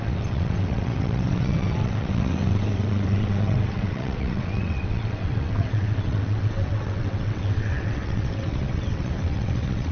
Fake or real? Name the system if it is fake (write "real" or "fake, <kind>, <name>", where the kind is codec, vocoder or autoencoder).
fake, vocoder, WaveNeXt